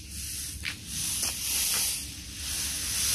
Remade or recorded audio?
recorded